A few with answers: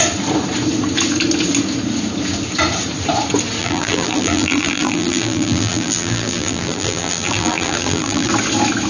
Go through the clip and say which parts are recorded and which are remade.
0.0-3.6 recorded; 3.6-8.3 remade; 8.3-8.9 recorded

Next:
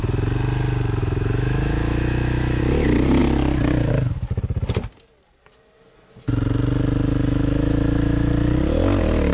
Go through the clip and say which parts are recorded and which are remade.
0.0-1.0 recorded; 1.0-2.6 remade; 2.6-7.1 recorded; 7.1-8.3 remade; 8.3-9.3 recorded